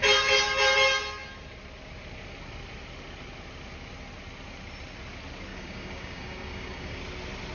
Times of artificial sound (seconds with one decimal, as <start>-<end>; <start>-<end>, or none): 5.5-7.0